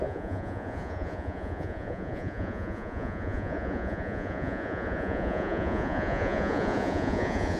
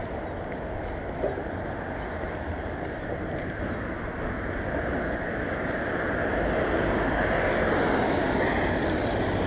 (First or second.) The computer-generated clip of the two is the first